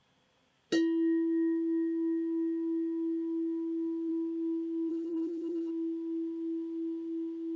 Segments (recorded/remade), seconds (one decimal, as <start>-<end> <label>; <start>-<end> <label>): 0.0-4.9 recorded; 4.9-5.7 remade; 5.7-7.6 recorded